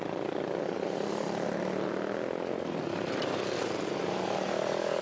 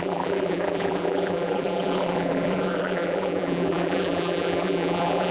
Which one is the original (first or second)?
first